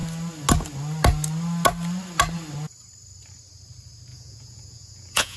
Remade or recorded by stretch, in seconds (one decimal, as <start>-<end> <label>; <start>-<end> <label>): 0.0-4.1 recorded; 4.1-5.4 remade